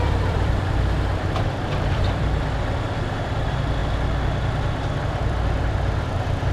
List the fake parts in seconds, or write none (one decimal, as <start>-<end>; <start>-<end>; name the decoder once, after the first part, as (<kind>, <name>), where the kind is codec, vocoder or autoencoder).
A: 0.0-3.8 (vocoder, BigVGAN v2); 5.0-6.5